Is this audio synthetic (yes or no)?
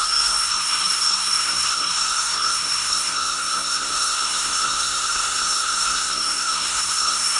yes